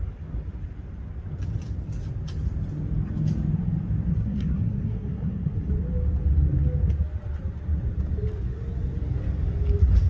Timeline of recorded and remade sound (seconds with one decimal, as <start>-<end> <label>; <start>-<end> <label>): 0.0-4.1 recorded; 4.1-5.7 remade; 5.7-10.1 recorded